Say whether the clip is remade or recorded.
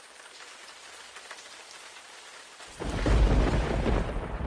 recorded